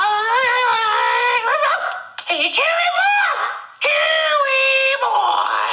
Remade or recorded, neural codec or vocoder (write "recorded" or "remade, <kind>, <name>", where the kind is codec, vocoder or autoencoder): recorded